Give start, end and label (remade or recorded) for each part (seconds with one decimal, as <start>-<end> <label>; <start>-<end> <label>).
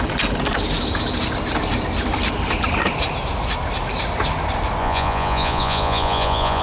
0.0-4.8 recorded; 4.8-6.6 remade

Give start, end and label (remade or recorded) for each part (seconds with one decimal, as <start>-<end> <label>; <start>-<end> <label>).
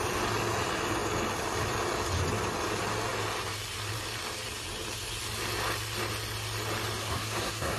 0.0-7.0 recorded; 7.0-7.8 remade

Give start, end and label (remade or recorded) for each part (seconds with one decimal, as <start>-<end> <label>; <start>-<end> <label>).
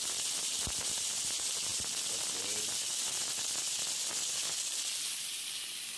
0.0-6.0 recorded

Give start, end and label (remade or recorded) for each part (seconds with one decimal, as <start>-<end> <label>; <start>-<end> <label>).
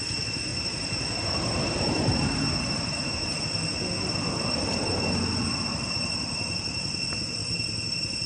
0.0-0.5 recorded; 0.5-3.4 remade; 3.4-8.3 recorded